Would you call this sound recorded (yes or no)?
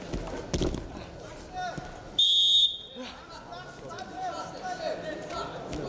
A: yes